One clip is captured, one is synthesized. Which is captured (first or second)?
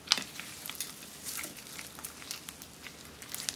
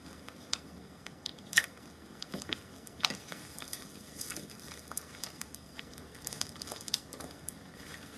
first